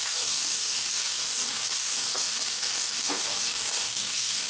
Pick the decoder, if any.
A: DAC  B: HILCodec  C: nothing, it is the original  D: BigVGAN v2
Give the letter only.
A